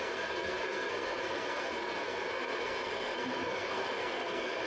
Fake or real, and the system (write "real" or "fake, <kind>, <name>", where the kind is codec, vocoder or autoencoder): fake, codec, SNAC